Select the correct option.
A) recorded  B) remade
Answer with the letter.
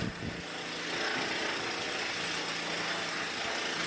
A